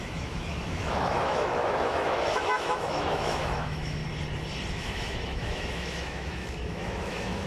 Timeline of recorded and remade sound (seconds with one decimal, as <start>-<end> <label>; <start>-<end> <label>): 0.0-4.0 remade; 4.0-4.7 recorded; 4.7-7.5 remade